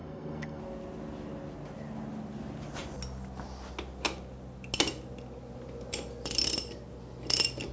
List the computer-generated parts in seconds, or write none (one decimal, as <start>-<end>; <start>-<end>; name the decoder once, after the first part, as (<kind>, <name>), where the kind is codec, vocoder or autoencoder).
0.0-0.6 (codec, SNAC)